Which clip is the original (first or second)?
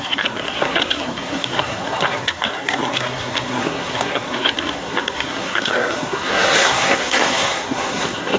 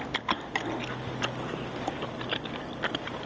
second